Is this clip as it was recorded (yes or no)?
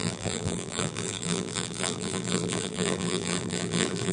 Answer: no